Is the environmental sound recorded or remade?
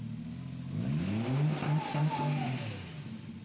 recorded